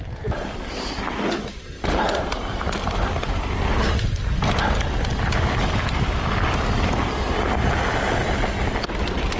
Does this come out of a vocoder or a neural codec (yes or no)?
no